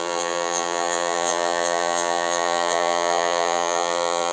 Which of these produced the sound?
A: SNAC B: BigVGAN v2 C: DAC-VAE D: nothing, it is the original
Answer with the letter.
B